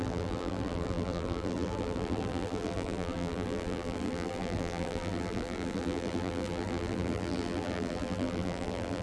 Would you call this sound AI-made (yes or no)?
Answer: yes